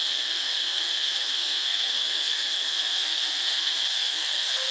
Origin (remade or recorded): remade